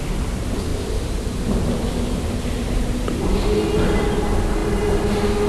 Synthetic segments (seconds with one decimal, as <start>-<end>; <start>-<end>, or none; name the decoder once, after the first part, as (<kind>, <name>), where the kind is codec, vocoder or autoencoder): none